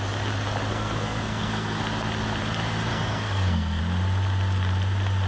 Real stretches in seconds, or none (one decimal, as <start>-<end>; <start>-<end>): 0.0-0.7; 1.8-2.9; 3.8-5.3

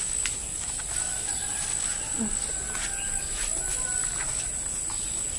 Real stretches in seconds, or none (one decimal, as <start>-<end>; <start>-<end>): 0.0-5.4

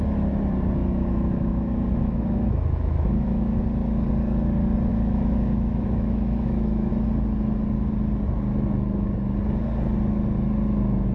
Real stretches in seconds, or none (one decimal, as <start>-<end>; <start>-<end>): 0.0-0.8; 3.5-4.9; 6.9-11.1

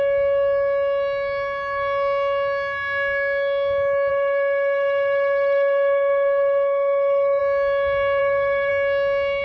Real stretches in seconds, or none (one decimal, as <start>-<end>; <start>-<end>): 0.0-4.1; 7.4-8.2; 8.7-9.4

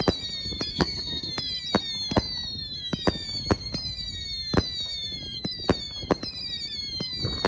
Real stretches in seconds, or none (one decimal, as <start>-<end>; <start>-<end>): 0.0-0.7; 1.3-7.5

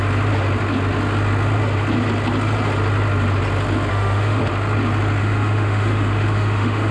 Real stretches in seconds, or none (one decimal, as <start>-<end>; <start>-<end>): 0.0-3.9; 4.4-5.2

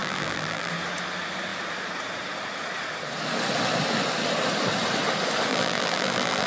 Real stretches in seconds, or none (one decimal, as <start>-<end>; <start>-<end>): 0.7-5.5